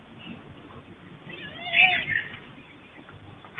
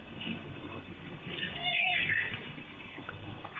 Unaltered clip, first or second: first